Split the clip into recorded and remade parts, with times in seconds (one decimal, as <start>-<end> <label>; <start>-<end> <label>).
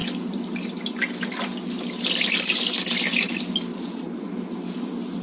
0.0-3.7 recorded; 3.7-4.2 remade; 4.2-5.2 recorded